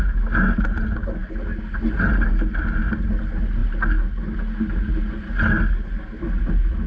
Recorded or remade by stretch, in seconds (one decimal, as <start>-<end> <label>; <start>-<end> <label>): 0.0-6.9 recorded